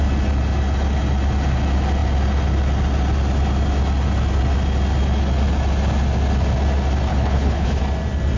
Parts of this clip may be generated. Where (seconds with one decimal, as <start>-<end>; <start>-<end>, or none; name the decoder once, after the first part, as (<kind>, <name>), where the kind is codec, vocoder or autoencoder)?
7.1-7.8 (codec, HILCodec)